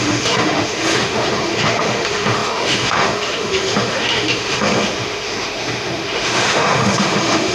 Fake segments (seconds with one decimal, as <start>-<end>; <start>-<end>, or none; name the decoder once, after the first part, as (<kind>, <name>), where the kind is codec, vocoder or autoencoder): 0.0-7.5 (autoencoder, DAC-VAE)